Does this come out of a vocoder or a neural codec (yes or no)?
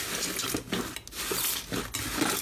no